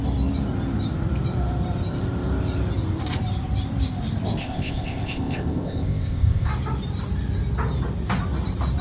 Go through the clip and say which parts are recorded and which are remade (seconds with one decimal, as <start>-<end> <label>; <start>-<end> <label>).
0.0-4.4 recorded; 4.4-6.5 remade; 6.5-8.8 recorded